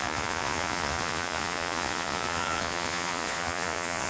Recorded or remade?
remade